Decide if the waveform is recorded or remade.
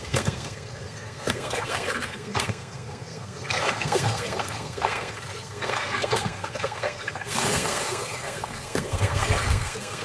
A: remade